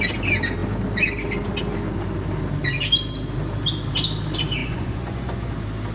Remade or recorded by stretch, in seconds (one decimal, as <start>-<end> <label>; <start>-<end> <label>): 0.0-4.6 recorded; 4.6-5.5 remade; 5.5-5.9 recorded